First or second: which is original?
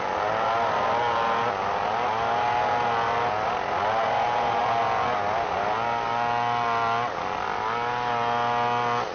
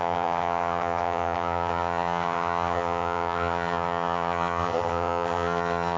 first